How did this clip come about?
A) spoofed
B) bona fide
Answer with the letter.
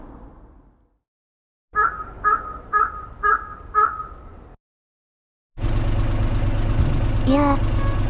B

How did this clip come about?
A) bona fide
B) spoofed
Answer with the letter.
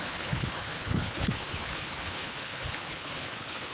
B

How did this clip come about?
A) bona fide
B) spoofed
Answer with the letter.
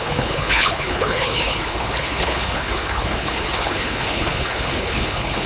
B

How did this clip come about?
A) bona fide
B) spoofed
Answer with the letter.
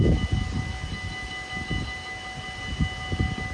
A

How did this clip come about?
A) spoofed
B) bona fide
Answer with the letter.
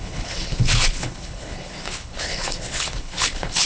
A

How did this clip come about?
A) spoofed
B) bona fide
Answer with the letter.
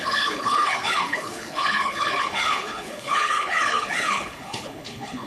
A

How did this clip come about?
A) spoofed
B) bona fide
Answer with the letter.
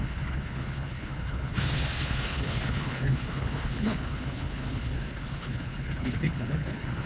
A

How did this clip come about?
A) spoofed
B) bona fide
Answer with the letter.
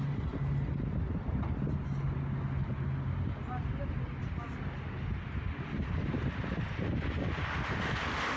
B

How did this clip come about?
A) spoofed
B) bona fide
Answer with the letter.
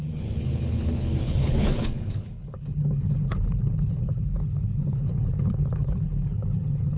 A